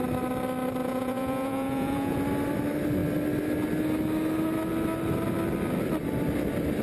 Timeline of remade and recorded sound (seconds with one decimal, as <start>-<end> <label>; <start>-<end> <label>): 0.0-0.8 recorded; 0.8-2.2 remade; 2.2-6.8 recorded